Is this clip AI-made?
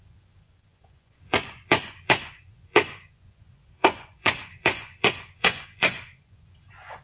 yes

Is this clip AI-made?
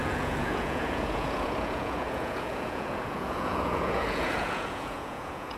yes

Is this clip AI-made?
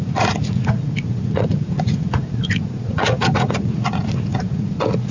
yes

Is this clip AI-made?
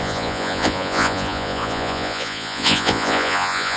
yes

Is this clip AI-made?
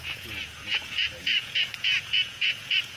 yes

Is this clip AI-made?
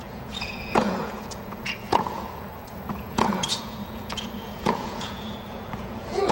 yes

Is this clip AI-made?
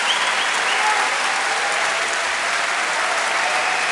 no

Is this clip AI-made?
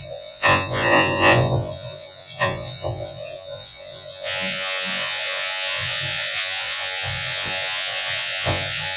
yes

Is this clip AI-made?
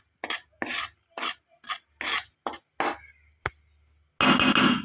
no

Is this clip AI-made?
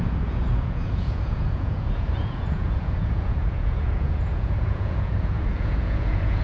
yes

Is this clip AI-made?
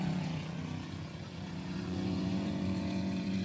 yes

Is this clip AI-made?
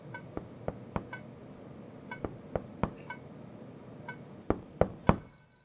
no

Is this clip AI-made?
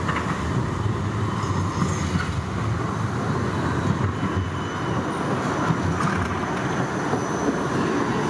no